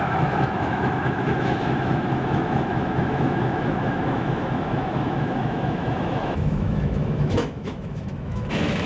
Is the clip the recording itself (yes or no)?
no